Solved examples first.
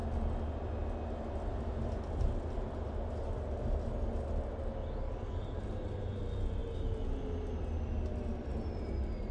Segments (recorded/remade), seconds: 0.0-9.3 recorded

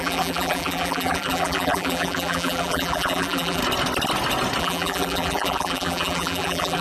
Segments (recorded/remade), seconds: 0.0-3.6 remade; 3.6-4.6 recorded; 4.6-6.8 remade

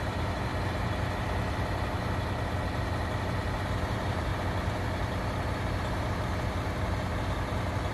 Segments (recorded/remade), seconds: 0.0-0.5 remade; 0.5-3.8 recorded; 3.8-4.3 remade; 4.3-7.9 recorded